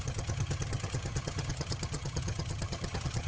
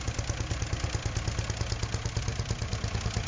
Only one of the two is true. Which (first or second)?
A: second